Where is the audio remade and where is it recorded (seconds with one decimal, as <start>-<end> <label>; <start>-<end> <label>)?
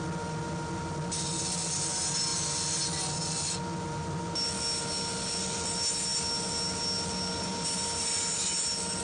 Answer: 0.0-9.0 recorded